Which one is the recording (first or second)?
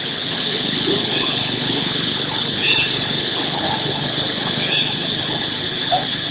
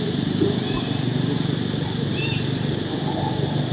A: second